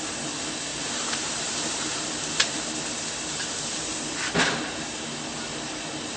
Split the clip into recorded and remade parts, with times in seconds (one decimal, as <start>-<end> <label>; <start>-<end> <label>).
0.0-0.7 recorded; 0.7-2.5 remade; 2.5-6.2 recorded